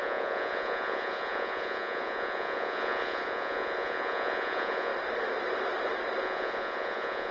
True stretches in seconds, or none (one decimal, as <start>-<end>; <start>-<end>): 4.9-6.2